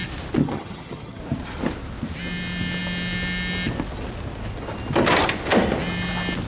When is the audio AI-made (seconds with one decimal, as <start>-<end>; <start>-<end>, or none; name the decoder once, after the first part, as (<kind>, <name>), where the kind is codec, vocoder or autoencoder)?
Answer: 0.4-1.2 (vocoder, HiFi-GAN)